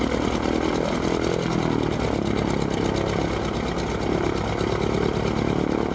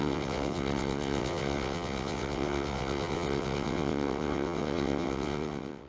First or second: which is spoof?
second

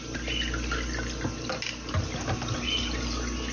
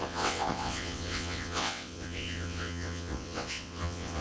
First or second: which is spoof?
second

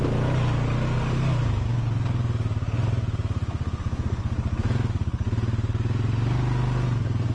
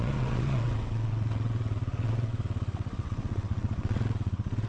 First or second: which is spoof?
second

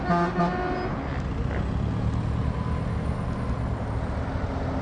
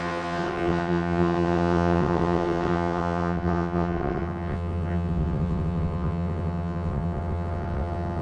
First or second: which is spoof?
second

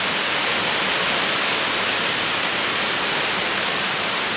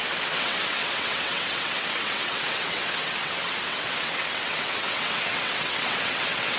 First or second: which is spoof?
second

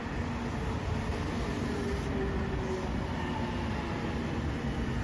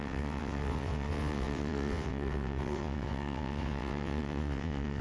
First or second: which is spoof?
second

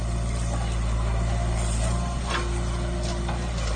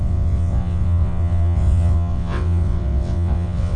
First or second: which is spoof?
second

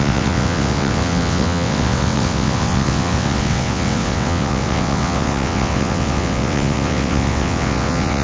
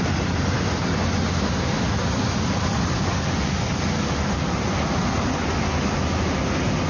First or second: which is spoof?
first